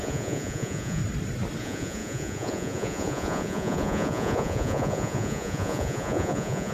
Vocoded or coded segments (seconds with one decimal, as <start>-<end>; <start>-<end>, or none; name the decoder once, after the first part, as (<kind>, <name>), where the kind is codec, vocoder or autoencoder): 0.0-1.0 (vocoder, Vocos); 1.6-6.7